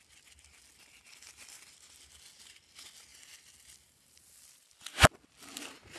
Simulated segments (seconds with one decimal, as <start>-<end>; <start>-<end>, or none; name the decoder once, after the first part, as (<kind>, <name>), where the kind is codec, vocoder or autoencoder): none

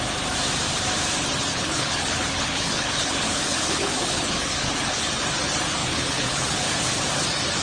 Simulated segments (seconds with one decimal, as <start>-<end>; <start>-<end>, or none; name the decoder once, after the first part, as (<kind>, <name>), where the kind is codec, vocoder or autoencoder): 1.5-5.1 (codec, HILCodec); 5.8-6.8